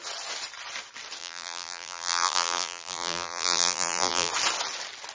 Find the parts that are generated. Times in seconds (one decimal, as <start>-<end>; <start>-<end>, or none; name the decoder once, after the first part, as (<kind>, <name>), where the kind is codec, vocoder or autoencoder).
1.2-4.3 (vocoder, BigVGAN v2)